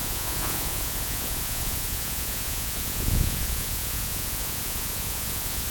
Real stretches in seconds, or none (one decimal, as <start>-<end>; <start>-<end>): none